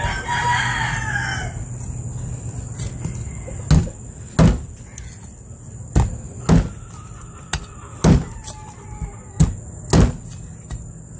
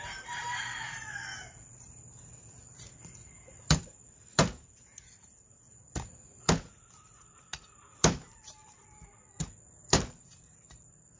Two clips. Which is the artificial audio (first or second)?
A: second